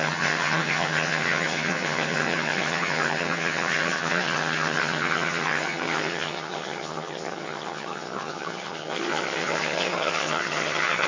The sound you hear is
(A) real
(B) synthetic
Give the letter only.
B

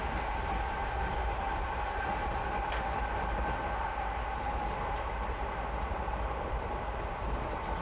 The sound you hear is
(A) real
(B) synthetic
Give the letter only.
A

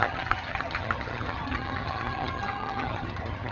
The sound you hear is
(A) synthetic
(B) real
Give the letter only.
A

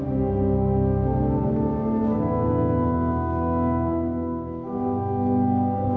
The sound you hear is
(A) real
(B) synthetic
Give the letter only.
A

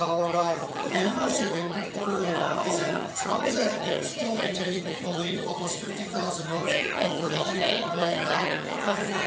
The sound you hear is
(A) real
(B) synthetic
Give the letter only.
B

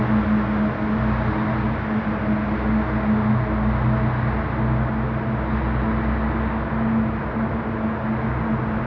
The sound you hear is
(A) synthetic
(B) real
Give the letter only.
B